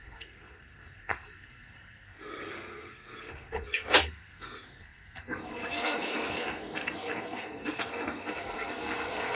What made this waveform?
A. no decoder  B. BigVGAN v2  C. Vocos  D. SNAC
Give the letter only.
D